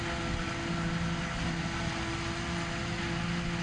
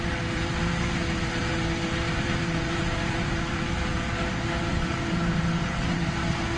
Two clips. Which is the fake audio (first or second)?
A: second